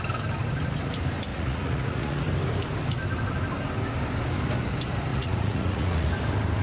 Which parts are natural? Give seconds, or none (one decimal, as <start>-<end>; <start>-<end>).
0.0-1.3; 2.2-5.1; 6.1-6.6